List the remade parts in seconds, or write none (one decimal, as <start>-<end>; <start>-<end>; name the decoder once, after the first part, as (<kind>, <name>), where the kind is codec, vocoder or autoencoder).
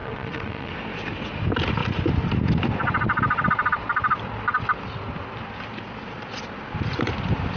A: 0.0-0.7 (vocoder, WaveNeXt)